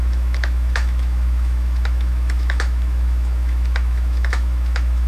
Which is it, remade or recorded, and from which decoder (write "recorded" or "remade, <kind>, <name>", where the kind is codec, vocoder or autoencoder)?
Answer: remade, autoencoder, DAC-VAE